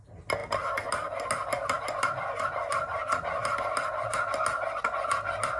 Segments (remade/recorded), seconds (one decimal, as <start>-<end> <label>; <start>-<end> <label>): 0.0-5.6 recorded